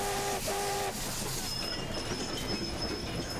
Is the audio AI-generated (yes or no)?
no